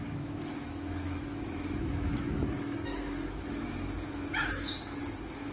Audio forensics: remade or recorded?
remade